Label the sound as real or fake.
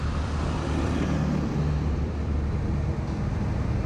real